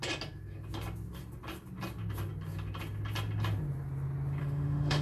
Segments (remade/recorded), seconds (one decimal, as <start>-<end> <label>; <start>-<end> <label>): 0.0-4.4 recorded; 4.4-5.0 remade